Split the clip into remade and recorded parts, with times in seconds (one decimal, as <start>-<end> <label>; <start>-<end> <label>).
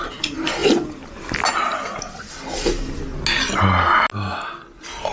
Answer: 0.0-5.1 recorded